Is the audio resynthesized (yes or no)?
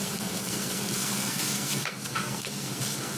yes